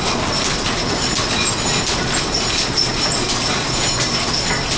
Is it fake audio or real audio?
real